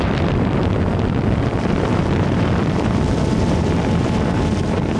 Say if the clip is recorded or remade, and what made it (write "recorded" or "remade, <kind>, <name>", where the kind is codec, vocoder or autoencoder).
remade, vocoder, BigVGAN v2